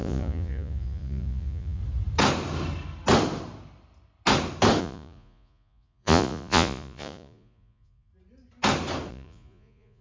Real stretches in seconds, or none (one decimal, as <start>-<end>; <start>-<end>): 1.8-4.8; 8.1-9.1